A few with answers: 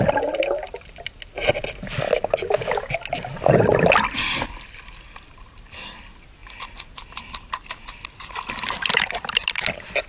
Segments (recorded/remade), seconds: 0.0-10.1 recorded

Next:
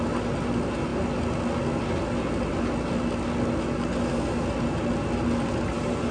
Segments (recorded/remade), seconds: 0.0-6.1 recorded

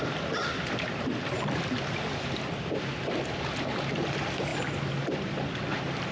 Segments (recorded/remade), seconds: 0.0-6.1 recorded

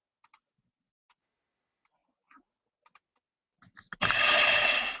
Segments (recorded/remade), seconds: 0.0-5.0 recorded

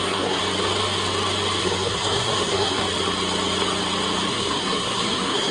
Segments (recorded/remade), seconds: 0.0-0.4 remade; 0.4-1.6 recorded; 1.6-2.8 remade; 2.8-4.3 recorded; 4.3-5.5 remade

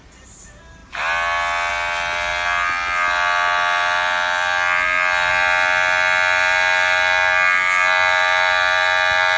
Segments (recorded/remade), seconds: 0.0-9.4 recorded

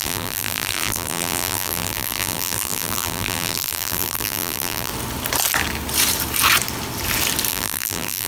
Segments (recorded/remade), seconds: 0.0-4.9 remade; 4.9-7.5 recorded; 7.5-8.3 remade

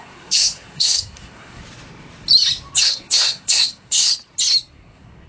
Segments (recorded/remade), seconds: 0.0-1.6 remade; 1.6-2.8 recorded; 2.8-4.1 remade; 4.1-4.7 recorded; 4.7-5.3 remade